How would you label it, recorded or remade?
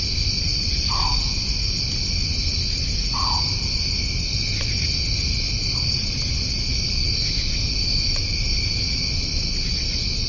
recorded